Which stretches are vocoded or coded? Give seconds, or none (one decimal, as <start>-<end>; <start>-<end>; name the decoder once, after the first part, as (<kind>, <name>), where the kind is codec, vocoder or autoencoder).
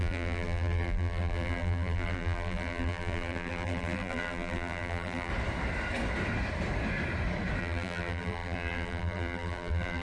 0.0-5.3 (vocoder, BigVGAN v2); 7.6-10.0